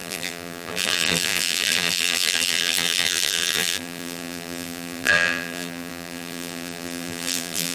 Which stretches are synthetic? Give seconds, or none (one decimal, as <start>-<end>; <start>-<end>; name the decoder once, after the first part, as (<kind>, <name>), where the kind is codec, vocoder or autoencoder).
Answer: 0.0-7.7 (vocoder, BigVGAN v2)